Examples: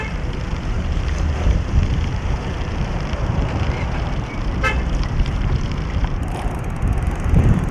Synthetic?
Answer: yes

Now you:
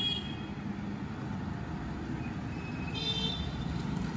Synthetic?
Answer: no